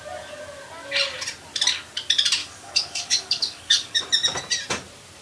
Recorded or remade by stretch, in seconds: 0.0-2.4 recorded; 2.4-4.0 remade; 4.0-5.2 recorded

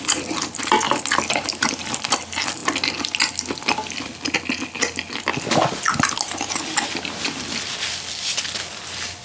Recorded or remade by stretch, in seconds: 0.0-9.2 recorded

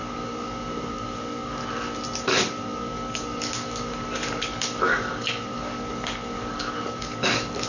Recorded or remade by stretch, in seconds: 0.0-1.6 remade; 1.6-2.2 recorded; 2.2-7.7 remade

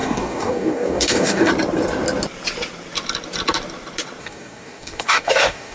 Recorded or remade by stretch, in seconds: 0.0-1.5 remade; 1.5-4.2 recorded; 4.2-5.7 remade

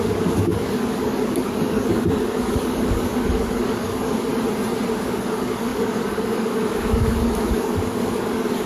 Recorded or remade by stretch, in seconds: 0.0-4.3 remade; 4.3-4.9 recorded; 4.9-8.7 remade

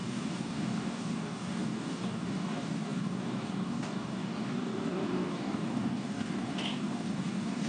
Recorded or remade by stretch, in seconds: 0.0-7.7 remade